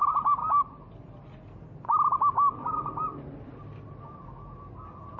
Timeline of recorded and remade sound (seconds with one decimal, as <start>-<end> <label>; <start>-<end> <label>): 0.0-5.2 recorded